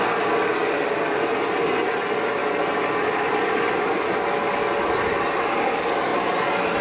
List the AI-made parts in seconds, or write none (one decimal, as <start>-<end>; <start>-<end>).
none